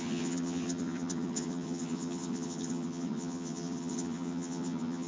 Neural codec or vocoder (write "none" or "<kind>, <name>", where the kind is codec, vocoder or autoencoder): vocoder, HiFi-GAN